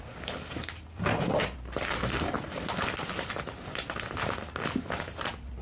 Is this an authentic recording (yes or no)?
yes